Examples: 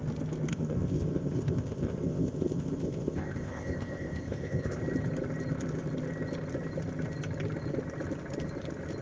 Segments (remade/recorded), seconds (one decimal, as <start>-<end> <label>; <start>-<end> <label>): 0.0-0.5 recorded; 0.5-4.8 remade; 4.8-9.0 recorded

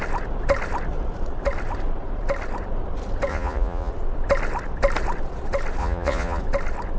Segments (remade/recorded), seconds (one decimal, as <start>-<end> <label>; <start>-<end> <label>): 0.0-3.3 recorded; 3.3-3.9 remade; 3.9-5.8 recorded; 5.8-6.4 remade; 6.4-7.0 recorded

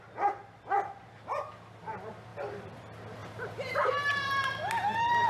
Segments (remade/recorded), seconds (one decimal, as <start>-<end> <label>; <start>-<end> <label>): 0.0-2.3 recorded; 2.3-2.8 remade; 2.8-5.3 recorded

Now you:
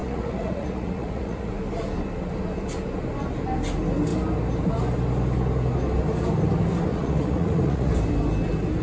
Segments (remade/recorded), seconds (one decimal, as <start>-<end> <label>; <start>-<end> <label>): 0.0-1.5 remade; 1.5-6.9 recorded; 6.9-7.9 remade; 7.9-8.8 recorded

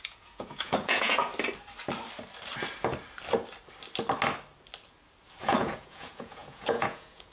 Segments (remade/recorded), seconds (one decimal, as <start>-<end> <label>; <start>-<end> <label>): 0.0-1.3 remade; 1.3-5.4 recorded; 5.4-7.3 remade

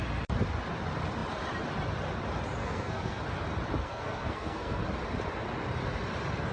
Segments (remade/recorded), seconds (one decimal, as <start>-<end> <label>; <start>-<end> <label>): 0.0-2.6 recorded; 2.6-3.2 remade; 3.2-3.8 recorded; 3.8-4.8 remade; 4.8-6.5 recorded

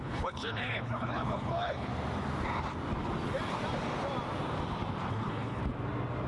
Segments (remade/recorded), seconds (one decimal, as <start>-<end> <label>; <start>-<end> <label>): 0.0-1.9 remade; 1.9-5.1 recorded; 5.1-5.6 remade; 5.6-6.3 recorded

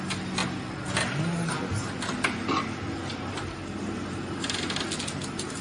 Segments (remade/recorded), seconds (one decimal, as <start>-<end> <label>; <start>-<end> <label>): 0.0-5.6 recorded